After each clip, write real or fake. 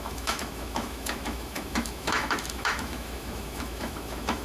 fake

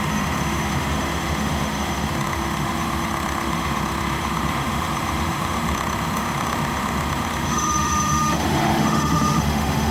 fake